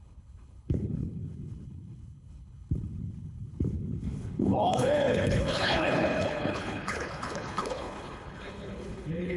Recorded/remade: remade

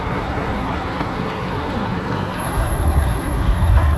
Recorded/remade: remade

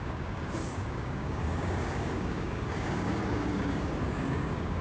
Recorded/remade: remade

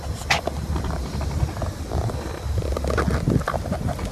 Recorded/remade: remade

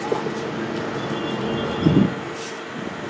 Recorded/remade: recorded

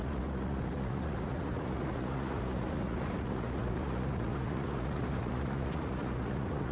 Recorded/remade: remade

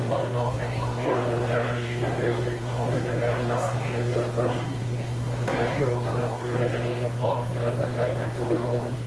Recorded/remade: remade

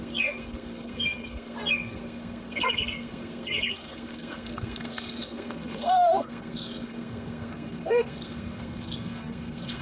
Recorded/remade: remade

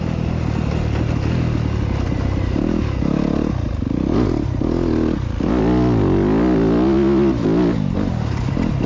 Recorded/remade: recorded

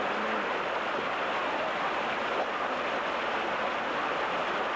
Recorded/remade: recorded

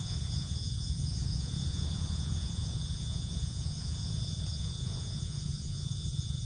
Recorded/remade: remade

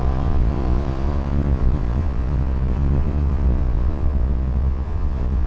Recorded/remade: remade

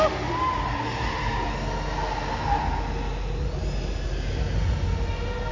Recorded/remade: recorded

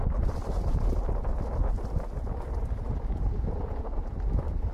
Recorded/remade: recorded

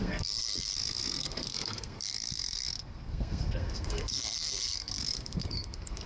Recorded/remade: remade